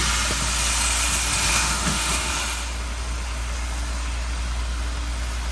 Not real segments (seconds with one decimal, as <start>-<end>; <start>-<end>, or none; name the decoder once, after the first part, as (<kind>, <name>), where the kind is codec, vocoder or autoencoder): 1.5-2.3 (autoencoder, DAC-VAE)